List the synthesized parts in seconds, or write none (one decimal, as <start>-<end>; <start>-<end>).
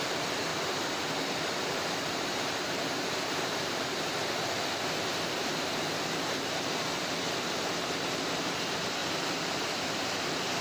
0.0-0.5; 1.7-10.6